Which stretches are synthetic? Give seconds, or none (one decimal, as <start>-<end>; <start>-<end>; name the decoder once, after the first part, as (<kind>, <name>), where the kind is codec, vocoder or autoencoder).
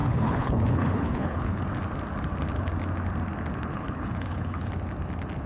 0.0-1.6 (codec, HILCodec); 3.7-4.7